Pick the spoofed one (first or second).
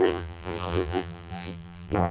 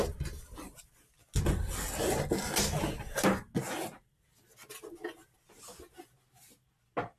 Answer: first